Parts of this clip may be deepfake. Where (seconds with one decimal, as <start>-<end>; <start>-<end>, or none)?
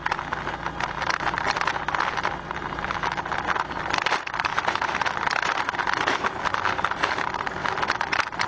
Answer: 4.5-5.1